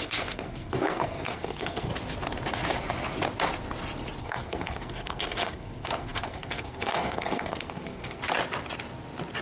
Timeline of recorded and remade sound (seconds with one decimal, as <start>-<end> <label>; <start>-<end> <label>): 0.0-1.9 remade; 1.9-4.2 recorded; 4.2-8.2 remade; 8.2-9.4 recorded